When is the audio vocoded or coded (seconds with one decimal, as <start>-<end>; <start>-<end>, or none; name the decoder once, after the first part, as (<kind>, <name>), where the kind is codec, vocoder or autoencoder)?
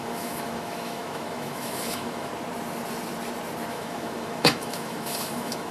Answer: 0.0-2.3 (autoencoder, DAC-VAE); 3.7-5.7